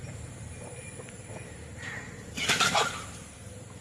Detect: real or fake fake